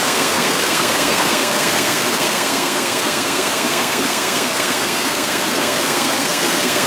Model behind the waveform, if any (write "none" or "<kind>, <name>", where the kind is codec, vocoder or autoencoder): codec, SNAC